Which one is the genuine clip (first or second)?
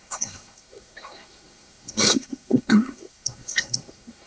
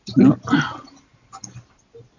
second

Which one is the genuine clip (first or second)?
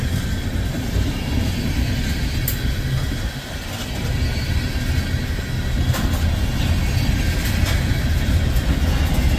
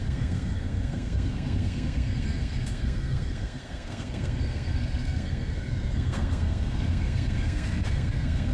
first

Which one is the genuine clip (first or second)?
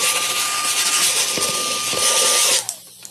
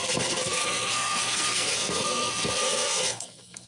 first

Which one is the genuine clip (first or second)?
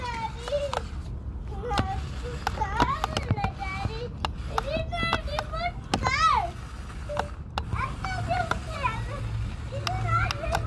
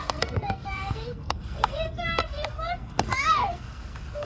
first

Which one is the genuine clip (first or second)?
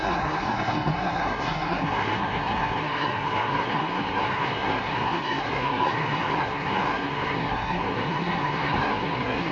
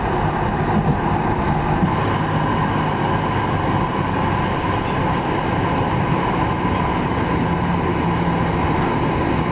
second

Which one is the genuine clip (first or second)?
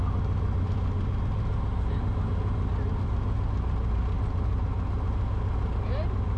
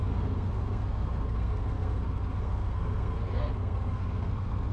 first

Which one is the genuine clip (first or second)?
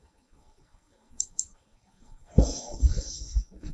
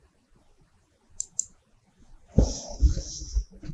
second